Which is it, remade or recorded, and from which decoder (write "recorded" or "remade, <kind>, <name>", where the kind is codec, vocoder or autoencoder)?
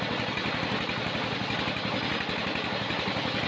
recorded